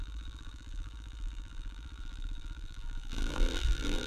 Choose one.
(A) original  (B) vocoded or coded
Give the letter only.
B